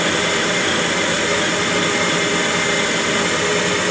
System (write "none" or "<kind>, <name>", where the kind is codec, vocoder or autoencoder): none